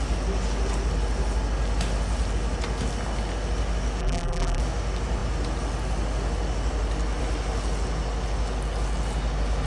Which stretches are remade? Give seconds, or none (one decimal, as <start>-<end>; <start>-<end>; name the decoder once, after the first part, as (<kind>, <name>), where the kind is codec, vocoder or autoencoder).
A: 4.0-4.6 (vocoder, BigVGAN v2)